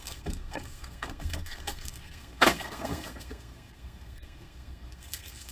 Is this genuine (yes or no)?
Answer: no